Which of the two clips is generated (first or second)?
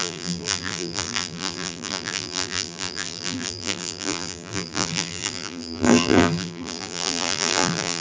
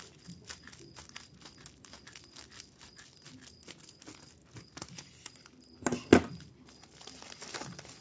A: first